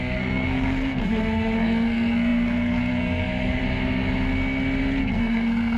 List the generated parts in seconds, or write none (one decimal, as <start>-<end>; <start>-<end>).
0.0-3.6; 5.0-5.8